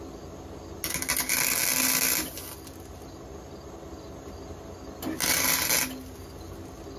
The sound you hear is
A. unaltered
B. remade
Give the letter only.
A